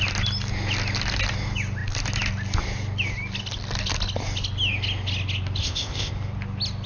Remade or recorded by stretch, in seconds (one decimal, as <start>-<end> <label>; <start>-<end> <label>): 0.0-5.6 recorded; 5.6-6.1 remade; 6.1-6.9 recorded